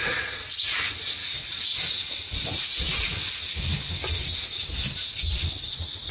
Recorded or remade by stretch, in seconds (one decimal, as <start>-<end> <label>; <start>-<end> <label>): 0.0-1.2 recorded; 1.2-2.1 remade; 2.1-6.1 recorded